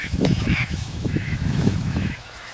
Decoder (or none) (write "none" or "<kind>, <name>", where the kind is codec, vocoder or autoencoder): autoencoder, DAC-VAE